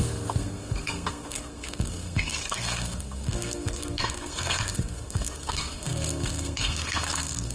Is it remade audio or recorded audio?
remade